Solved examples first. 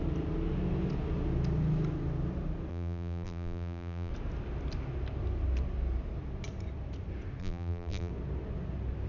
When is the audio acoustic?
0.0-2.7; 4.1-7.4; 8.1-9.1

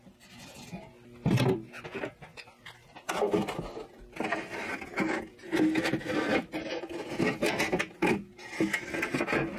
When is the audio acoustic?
0.0-9.6

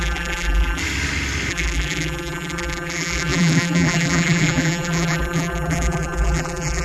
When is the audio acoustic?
0.8-1.5

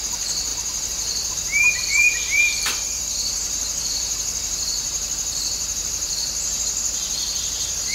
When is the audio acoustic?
none

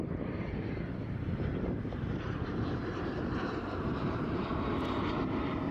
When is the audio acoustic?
0.0-1.5; 4.5-5.7